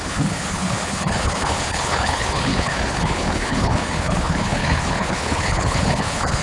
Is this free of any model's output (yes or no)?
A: no